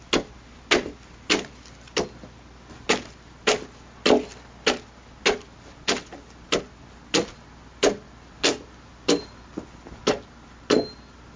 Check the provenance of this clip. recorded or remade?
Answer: recorded